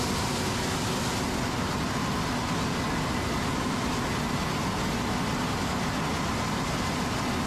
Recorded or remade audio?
recorded